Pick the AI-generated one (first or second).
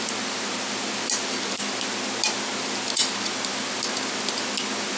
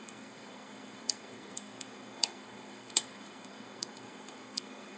second